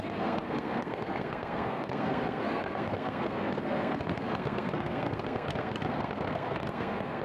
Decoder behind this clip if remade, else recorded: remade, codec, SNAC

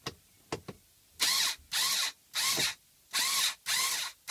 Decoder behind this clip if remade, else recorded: recorded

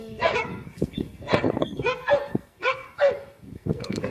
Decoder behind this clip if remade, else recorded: remade, codec, SNAC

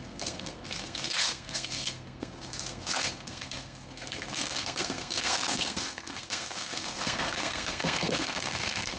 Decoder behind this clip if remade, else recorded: remade, codec, SNAC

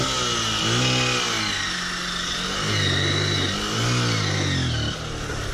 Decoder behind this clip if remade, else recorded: recorded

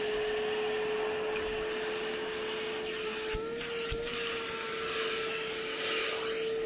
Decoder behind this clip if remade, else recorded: recorded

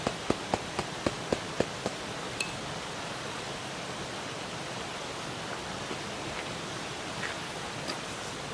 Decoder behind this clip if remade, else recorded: recorded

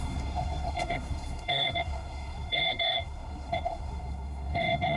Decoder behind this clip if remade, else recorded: remade, codec, SNAC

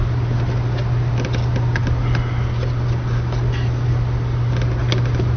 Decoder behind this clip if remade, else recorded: recorded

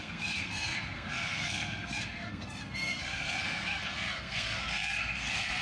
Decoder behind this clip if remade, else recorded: remade, codec, SNAC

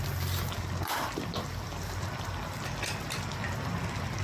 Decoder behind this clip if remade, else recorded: recorded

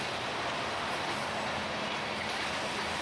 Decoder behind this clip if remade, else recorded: recorded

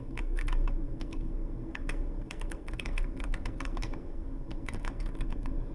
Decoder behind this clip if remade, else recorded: remade, codec, SNAC